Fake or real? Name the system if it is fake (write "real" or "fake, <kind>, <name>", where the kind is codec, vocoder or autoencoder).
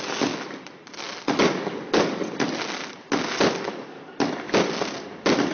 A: real